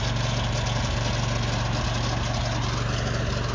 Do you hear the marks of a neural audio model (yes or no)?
no